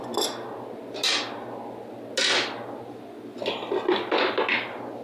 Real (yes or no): yes